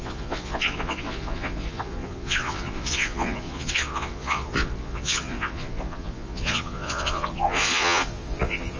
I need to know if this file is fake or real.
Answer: fake